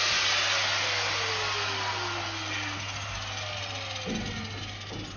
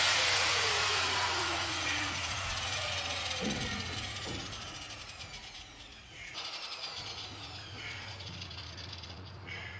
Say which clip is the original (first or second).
first